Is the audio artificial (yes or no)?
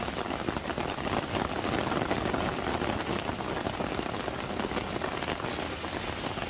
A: no